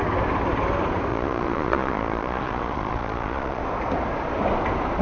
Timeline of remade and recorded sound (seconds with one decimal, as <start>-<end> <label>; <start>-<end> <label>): 0.0-1.1 recorded; 1.1-3.6 remade; 3.6-5.0 recorded